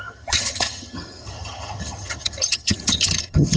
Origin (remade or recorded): remade